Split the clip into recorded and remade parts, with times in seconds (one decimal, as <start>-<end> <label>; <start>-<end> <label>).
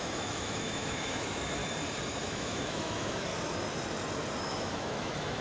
0.0-1.6 remade; 1.6-2.2 recorded; 2.2-3.3 remade; 3.3-4.4 recorded; 4.4-5.4 remade